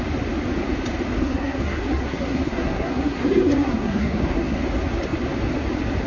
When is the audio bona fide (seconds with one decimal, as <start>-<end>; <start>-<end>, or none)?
0.0-1.2; 4.6-6.1